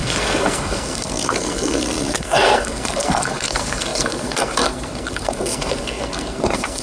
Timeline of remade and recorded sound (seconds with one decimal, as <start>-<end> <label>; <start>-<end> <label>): 0.0-6.8 remade